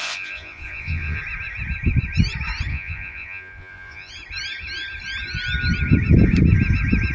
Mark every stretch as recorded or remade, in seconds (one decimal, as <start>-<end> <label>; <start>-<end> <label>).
0.0-1.2 remade; 1.2-2.7 recorded; 2.7-4.1 remade; 4.1-7.1 recorded